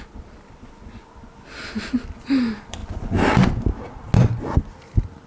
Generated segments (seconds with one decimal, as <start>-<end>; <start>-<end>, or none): none